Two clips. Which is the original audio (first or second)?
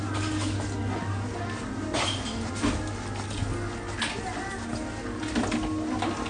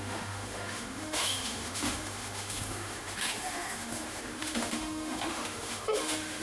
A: first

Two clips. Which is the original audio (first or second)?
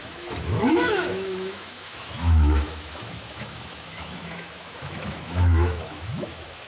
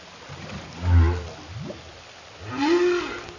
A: second